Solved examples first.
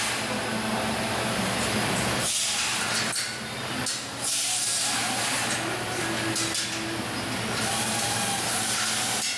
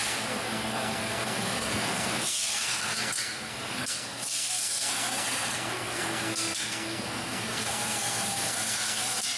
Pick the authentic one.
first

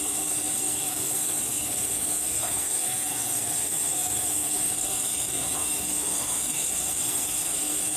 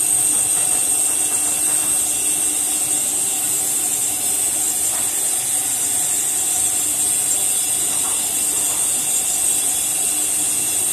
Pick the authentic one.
second